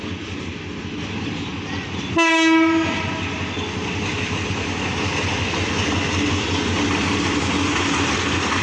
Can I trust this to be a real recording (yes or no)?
yes